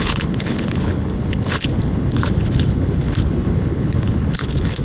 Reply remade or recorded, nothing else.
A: remade